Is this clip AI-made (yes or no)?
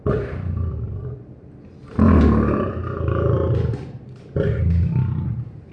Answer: no